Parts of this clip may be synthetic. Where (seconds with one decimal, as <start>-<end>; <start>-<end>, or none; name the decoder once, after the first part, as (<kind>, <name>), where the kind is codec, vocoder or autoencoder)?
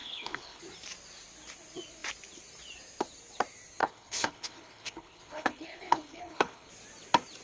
0.0-0.6 (codec, HILCodec); 3.8-6.7